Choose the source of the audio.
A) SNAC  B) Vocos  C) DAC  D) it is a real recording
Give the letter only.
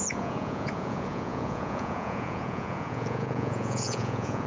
B